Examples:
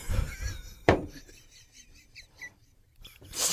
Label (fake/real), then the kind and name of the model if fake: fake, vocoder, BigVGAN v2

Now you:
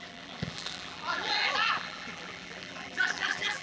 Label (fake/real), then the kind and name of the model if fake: fake, vocoder, BigVGAN v2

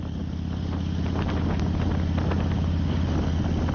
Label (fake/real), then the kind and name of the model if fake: real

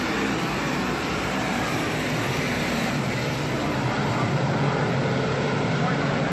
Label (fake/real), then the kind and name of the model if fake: fake, vocoder, BigVGAN v2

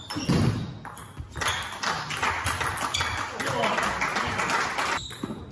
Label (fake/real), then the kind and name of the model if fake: real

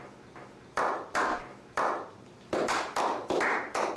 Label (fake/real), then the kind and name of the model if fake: fake, vocoder, BigVGAN v2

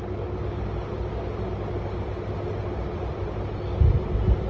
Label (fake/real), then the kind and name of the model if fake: real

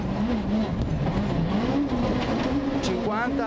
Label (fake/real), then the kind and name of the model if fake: real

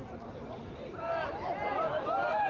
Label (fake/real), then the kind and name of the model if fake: fake, vocoder, BigVGAN v2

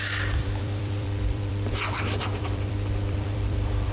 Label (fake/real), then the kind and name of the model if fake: fake, vocoder, BigVGAN v2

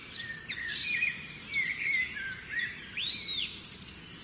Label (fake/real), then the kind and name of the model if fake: fake, vocoder, BigVGAN v2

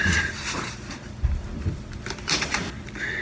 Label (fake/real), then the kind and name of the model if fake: fake, vocoder, BigVGAN v2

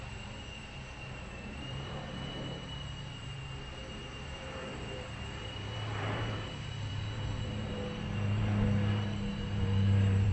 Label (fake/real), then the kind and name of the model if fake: fake, vocoder, BigVGAN v2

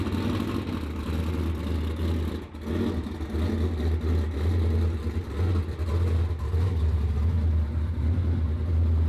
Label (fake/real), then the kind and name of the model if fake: real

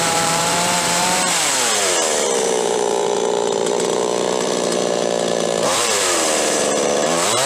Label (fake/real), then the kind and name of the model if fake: fake, vocoder, BigVGAN v2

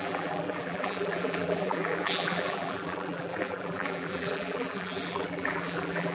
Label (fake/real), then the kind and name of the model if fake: fake, vocoder, BigVGAN v2